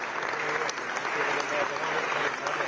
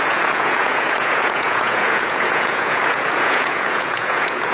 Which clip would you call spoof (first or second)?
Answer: second